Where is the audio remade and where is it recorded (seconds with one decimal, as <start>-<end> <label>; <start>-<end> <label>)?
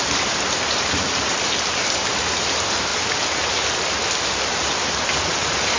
0.0-5.8 recorded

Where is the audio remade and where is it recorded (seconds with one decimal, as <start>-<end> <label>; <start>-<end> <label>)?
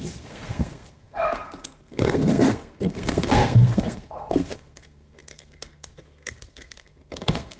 0.0-7.6 remade